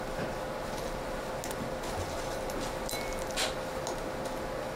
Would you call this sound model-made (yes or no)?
no